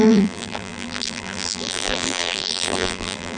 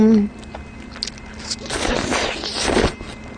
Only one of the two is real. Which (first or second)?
second